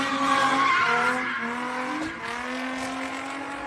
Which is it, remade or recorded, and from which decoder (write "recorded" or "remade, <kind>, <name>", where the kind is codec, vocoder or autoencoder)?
recorded